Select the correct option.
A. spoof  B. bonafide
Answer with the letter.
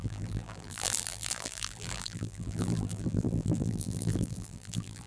A